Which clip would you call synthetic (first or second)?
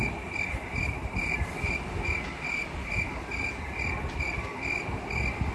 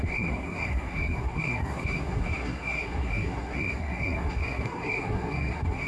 second